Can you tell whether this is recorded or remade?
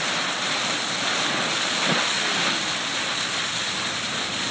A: recorded